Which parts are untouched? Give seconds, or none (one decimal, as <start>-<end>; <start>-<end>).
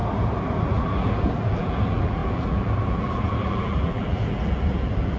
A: 0.0-0.6